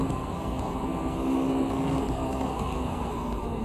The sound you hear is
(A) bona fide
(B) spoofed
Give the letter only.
B